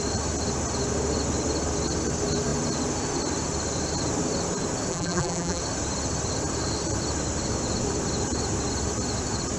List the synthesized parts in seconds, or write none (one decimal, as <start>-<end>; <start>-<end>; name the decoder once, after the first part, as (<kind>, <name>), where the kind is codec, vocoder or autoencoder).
4.9-5.6 (vocoder, BigVGAN v2)